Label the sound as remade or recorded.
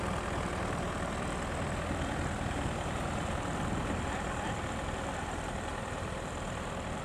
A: remade